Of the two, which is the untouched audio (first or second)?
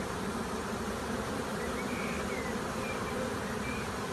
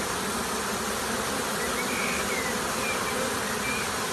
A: second